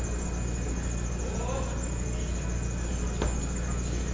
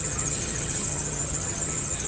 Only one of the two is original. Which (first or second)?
first